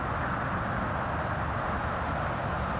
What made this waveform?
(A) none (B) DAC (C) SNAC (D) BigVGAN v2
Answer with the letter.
A